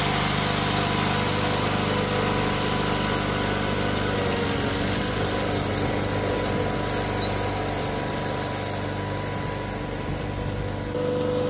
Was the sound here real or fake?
real